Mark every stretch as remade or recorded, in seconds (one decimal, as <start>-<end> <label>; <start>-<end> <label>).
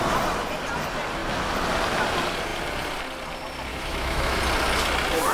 0.0-3.7 recorded; 3.7-4.4 remade; 4.4-5.3 recorded